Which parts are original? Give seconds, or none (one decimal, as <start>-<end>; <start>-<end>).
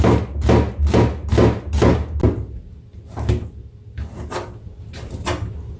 0.0-5.8